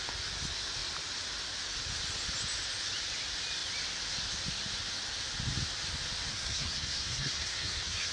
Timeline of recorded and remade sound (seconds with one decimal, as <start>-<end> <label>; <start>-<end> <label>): 0.0-6.3 recorded; 6.3-8.1 remade